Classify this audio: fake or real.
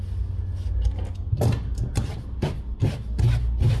real